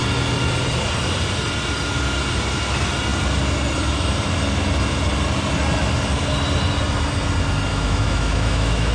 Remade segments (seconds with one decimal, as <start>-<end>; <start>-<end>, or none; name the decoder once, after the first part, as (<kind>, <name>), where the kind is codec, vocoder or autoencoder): 7.7-8.9 (autoencoder, DAC-VAE)